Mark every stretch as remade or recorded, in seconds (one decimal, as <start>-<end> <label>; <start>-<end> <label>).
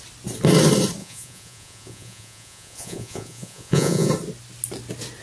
0.0-1.0 recorded; 1.0-4.1 remade; 4.1-5.2 recorded